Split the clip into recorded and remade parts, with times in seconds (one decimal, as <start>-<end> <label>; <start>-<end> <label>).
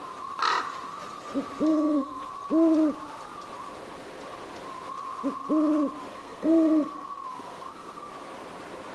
0.0-1.7 recorded; 1.7-2.3 remade; 2.3-6.1 recorded; 6.1-8.1 remade; 8.1-8.9 recorded